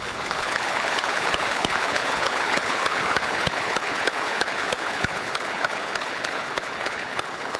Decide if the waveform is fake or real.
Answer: fake